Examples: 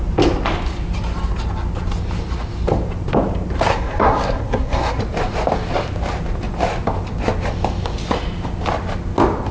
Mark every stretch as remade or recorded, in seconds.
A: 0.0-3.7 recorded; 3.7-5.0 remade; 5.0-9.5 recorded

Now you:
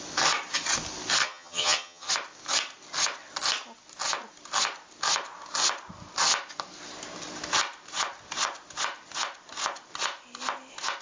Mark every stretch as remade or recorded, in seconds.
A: 0.0-1.2 recorded; 1.2-2.1 remade; 2.1-11.0 recorded

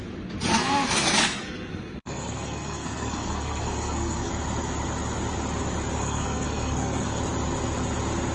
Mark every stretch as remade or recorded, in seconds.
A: 0.0-0.5 recorded; 0.5-4.3 remade; 4.3-6.0 recorded; 6.0-7.2 remade; 7.2-8.3 recorded

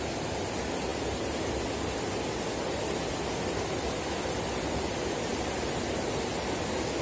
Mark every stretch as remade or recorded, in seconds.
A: 0.0-7.0 recorded

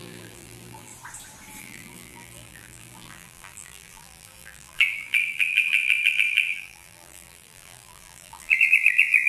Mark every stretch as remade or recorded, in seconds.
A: 0.0-0.9 remade; 0.9-1.6 recorded; 1.6-9.3 remade

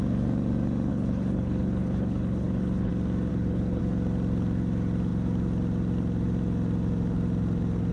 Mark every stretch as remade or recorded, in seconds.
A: 0.0-0.9 recorded; 0.9-2.9 remade; 2.9-3.3 recorded; 3.3-3.8 remade; 3.8-7.9 recorded